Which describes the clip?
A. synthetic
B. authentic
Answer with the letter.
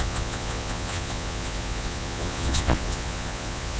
A